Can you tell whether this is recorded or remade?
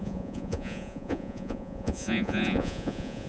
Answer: remade